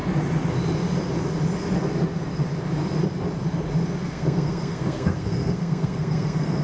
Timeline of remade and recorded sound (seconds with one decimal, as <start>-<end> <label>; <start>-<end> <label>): 0.0-4.0 recorded; 4.0-6.6 remade